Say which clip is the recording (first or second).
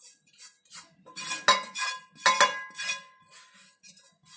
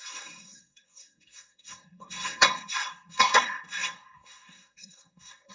first